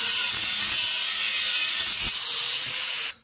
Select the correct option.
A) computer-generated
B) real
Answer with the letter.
A